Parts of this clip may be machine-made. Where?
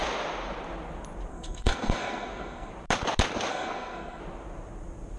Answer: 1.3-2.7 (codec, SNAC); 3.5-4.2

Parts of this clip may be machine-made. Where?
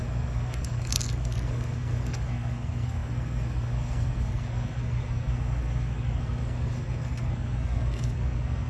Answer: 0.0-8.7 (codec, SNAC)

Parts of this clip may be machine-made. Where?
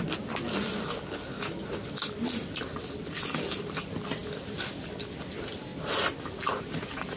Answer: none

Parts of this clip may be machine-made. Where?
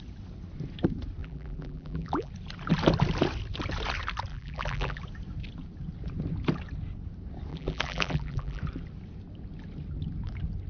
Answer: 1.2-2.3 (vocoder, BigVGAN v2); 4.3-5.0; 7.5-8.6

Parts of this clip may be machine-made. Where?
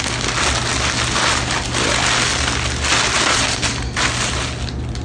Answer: none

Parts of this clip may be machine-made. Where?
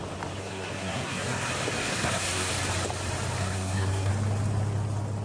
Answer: 0.4-1.5 (codec, SNAC); 1.9-2.5; 3.4-4.1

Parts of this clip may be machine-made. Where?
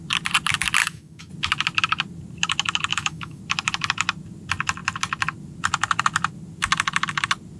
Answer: 0.8-1.3 (autoencoder, DAC-VAE); 2.9-3.4